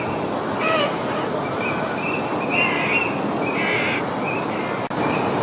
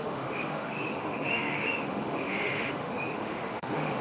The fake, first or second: second